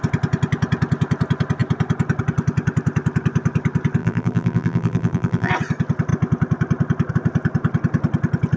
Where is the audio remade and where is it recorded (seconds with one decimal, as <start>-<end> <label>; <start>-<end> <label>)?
0.0-4.0 recorded; 4.0-5.5 remade; 5.5-8.6 recorded